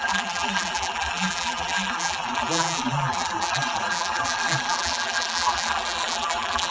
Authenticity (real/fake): fake